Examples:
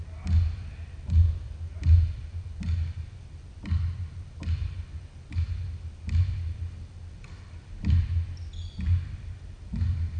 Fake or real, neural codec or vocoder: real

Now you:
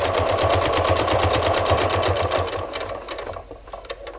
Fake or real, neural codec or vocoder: fake, vocoder, BigVGAN v2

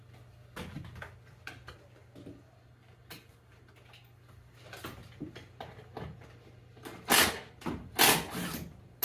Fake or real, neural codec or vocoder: real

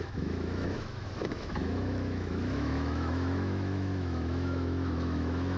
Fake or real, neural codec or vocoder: fake, autoencoder, DAC-VAE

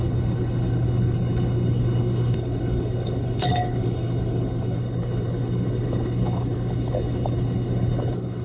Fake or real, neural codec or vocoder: fake, codec, HILCodec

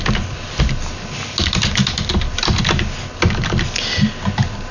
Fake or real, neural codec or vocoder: real